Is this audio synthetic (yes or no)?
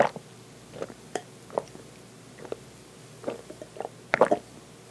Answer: no